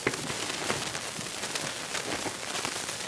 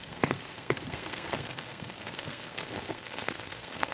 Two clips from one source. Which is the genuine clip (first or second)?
first